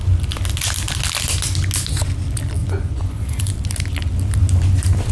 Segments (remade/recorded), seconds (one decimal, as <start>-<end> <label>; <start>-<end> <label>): 0.0-2.6 recorded; 2.6-3.4 remade; 3.4-5.1 recorded